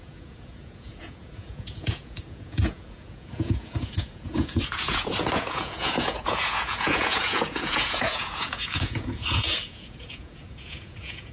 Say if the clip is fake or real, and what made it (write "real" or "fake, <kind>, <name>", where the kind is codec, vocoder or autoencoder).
fake, vocoder, Vocos